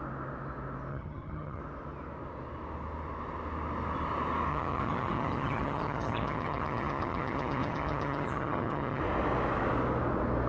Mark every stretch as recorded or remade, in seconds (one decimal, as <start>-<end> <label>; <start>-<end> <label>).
0.0-0.9 recorded; 0.9-1.6 remade; 1.6-4.5 recorded; 4.5-9.0 remade; 9.0-10.5 recorded